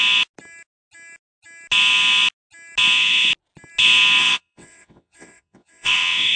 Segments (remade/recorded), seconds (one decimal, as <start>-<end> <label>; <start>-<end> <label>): 0.0-4.2 recorded; 4.2-6.4 remade